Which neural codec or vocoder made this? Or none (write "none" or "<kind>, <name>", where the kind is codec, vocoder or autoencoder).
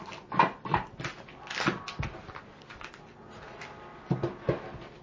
vocoder, BigVGAN v2